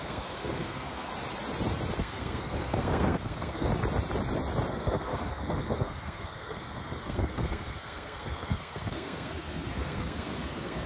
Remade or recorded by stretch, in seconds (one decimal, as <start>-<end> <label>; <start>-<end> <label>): 0.0-1.1 remade; 1.1-2.0 recorded; 2.0-3.7 remade; 3.7-4.7 recorded; 4.7-10.9 remade